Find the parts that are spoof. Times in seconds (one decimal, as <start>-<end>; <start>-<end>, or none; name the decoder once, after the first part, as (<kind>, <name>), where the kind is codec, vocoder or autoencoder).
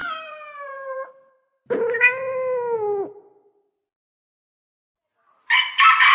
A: 0.0-1.8 (vocoder, BigVGAN v2)